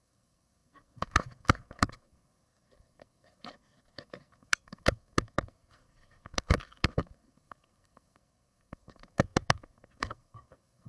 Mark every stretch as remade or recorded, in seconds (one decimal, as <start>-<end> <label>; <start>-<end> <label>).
0.0-10.9 remade